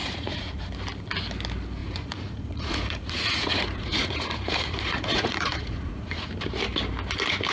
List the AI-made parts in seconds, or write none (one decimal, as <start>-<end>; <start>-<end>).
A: 0.0-0.7; 1.8-6.3